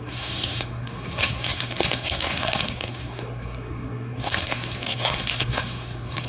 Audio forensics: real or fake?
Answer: fake